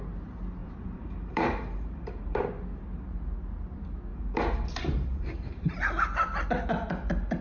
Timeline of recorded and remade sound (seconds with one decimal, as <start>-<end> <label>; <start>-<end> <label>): 0.0-0.6 recorded; 0.6-2.4 remade; 2.4-4.1 recorded; 4.1-5.8 remade; 5.8-7.4 recorded